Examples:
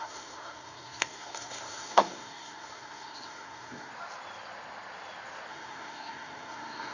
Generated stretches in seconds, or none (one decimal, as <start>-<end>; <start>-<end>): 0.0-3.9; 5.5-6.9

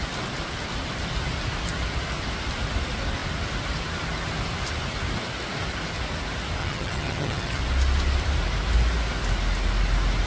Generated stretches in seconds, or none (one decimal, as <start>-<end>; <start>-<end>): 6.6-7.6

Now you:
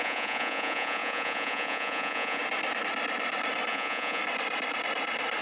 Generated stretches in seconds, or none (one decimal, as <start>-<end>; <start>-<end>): 0.0-2.4; 3.7-4.2